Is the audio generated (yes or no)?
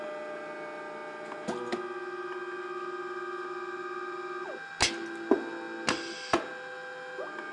no